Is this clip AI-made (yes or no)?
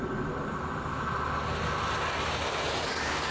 no